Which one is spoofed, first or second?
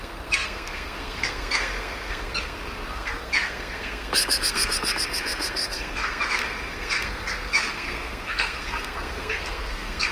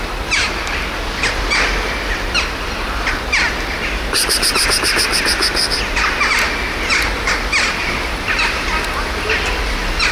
first